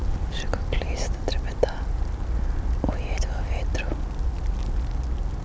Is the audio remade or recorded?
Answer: recorded